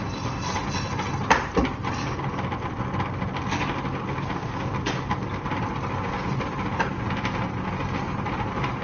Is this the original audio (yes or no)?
yes